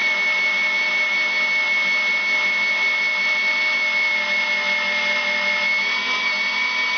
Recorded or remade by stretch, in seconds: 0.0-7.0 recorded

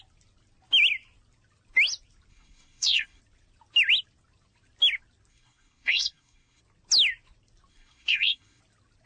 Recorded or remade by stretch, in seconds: 0.0-2.3 recorded; 2.3-3.2 remade; 3.2-5.3 recorded; 5.3-6.6 remade; 6.6-7.7 recorded; 7.7-8.6 remade; 8.6-9.1 recorded